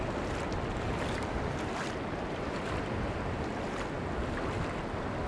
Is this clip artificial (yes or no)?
no